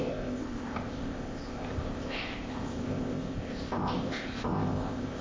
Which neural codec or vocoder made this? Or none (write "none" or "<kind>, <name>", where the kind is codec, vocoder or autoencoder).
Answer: codec, ZipCodec